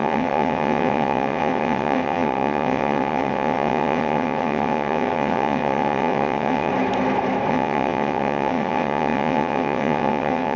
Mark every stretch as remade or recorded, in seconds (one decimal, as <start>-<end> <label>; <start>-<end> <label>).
0.0-6.7 remade; 6.7-7.5 recorded; 7.5-10.6 remade